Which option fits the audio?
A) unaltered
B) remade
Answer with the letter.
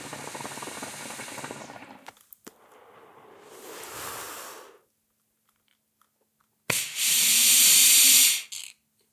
A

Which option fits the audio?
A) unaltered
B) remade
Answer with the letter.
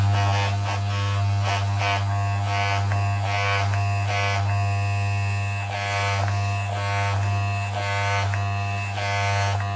A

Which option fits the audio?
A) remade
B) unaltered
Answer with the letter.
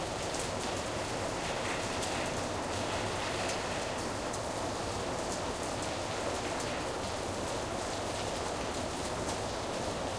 B